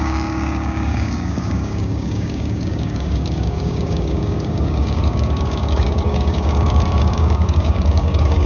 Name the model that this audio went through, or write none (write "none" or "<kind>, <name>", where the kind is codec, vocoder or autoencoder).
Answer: codec, DAC